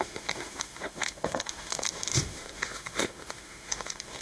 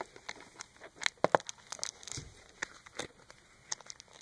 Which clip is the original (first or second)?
second